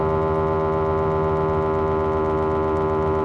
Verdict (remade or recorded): recorded